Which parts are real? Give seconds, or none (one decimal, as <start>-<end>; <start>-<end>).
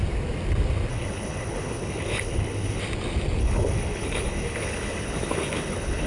0.0-0.9; 2.8-3.4